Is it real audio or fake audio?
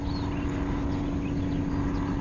real